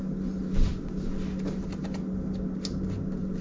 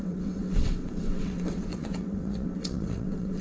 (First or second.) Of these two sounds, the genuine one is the first